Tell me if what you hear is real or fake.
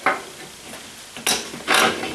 real